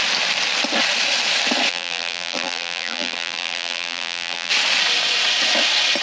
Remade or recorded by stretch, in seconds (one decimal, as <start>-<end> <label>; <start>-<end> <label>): 0.0-1.7 recorded; 1.7-4.5 remade; 4.5-6.0 recorded